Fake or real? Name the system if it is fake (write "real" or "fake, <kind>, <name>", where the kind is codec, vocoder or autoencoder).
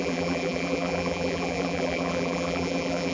fake, vocoder, BigVGAN v2